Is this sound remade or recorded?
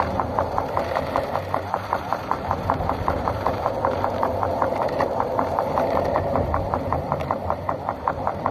remade